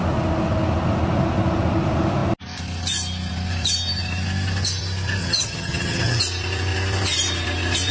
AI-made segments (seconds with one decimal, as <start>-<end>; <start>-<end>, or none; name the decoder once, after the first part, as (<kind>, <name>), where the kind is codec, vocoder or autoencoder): 5.2-6.2 (vocoder, HiFi-GAN)